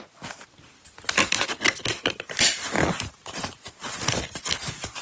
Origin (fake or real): real